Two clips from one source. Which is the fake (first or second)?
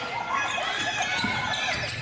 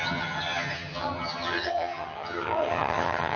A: second